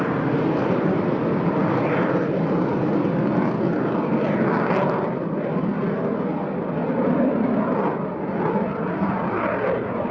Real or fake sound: real